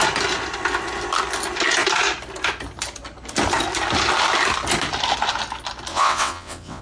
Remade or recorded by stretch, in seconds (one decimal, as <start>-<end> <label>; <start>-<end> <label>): 0.0-5.9 recorded; 5.9-6.8 remade